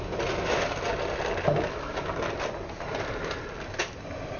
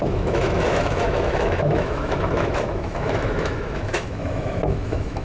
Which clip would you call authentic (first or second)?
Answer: first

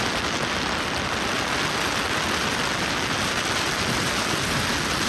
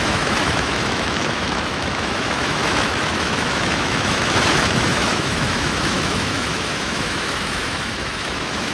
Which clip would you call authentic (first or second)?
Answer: first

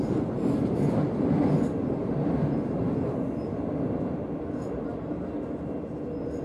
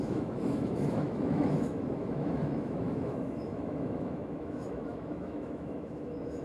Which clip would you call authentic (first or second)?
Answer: first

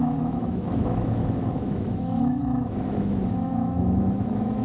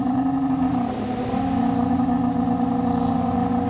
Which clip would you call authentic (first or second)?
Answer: second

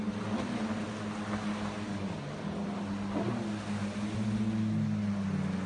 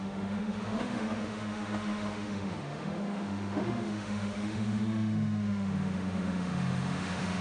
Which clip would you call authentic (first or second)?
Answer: first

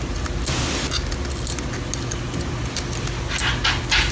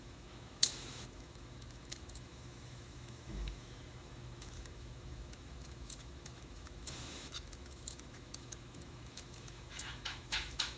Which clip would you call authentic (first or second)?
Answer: first